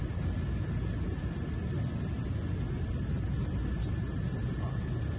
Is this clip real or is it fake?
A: real